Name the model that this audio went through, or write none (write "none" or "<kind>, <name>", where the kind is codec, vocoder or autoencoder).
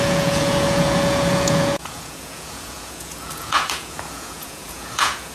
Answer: vocoder, Vocos